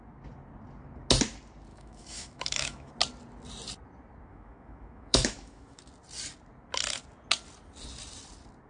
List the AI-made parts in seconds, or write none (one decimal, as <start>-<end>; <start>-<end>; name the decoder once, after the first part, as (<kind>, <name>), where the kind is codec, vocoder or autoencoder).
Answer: 1.7-2.9 (autoencoder, DAC-VAE); 4.3-5.8